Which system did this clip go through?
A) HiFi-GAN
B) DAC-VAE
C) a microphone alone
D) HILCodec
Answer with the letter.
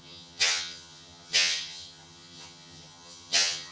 A